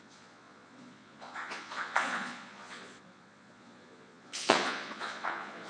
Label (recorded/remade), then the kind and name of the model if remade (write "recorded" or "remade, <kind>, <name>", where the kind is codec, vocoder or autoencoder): remade, vocoder, Vocos